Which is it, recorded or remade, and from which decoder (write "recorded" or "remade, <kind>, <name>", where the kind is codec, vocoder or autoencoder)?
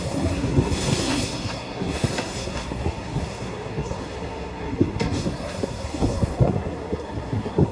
remade, codec, SNAC